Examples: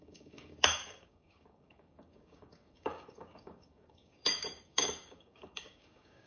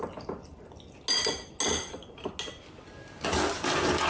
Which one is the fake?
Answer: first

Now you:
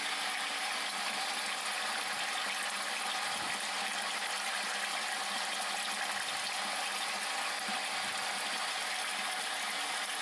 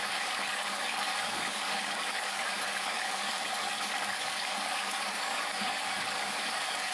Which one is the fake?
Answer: second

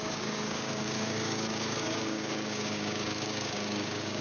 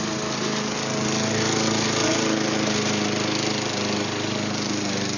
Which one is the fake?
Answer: first